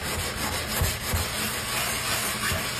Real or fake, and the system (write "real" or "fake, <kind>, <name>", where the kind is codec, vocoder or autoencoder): real